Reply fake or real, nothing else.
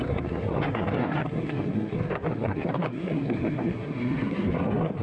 fake